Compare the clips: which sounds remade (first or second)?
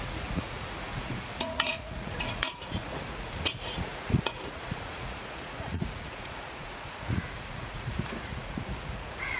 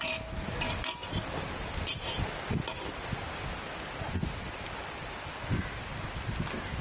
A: first